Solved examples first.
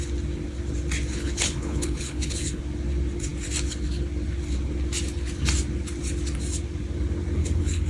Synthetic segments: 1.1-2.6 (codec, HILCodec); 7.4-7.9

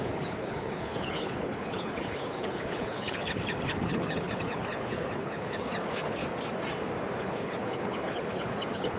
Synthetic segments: 0.0-6.2 (codec, HILCodec); 7.2-9.0